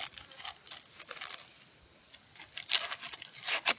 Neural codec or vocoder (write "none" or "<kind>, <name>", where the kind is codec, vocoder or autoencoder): none